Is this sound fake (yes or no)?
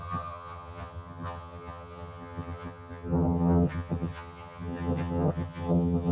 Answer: yes